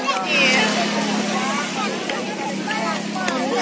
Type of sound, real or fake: real